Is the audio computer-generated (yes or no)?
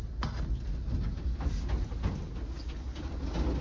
no